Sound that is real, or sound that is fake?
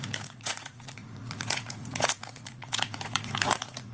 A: fake